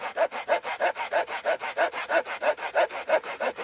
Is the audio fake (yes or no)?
no